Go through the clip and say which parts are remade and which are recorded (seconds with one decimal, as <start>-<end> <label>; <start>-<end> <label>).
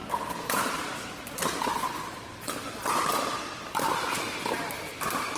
0.0-4.0 recorded; 4.0-5.4 remade